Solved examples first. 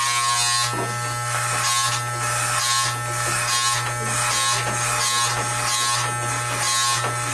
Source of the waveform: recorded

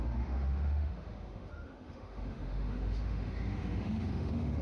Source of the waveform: remade